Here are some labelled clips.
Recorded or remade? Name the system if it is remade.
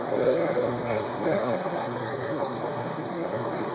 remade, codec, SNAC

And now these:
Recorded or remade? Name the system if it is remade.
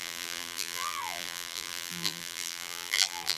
remade, vocoder, BigVGAN v2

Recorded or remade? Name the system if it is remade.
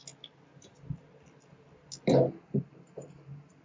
recorded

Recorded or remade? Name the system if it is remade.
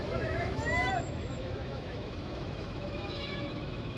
remade, autoencoder, DAC-VAE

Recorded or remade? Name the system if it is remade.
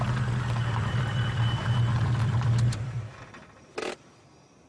remade, vocoder, BigVGAN v2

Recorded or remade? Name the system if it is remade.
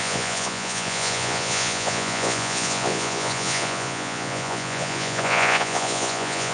remade, vocoder, Vocos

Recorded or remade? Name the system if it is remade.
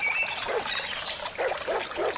recorded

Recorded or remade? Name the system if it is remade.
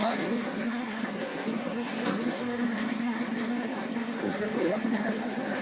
remade, codec, SNAC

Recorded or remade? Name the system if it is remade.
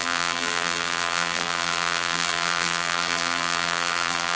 remade, vocoder, BigVGAN v2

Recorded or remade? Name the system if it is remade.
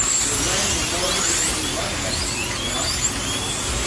recorded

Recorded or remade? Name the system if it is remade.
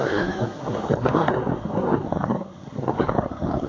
remade, codec, SNAC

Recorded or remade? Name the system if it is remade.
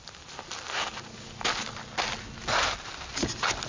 recorded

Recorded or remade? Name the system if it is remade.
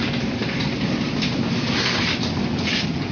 recorded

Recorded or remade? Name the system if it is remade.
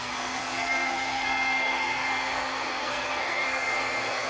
remade, codec, SNAC